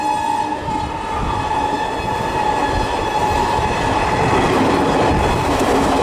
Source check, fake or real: real